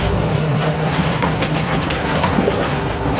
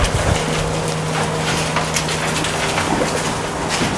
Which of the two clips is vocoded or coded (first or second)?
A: first